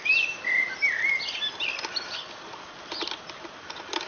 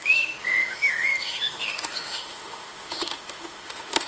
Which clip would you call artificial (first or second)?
second